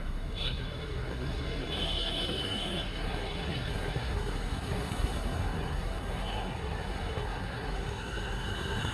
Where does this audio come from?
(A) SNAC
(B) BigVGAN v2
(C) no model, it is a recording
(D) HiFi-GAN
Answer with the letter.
A